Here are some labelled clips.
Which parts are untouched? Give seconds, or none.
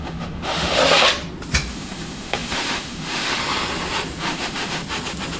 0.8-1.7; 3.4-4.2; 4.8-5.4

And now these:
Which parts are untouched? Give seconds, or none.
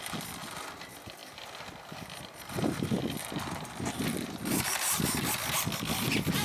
0.0-6.4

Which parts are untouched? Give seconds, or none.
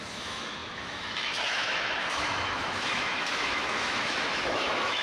none